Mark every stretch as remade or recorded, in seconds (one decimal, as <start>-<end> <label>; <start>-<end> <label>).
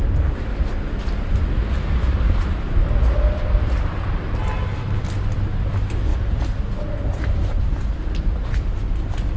0.0-9.4 recorded